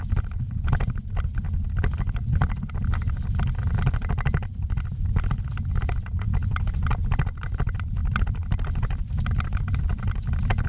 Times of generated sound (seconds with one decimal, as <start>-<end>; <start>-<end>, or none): none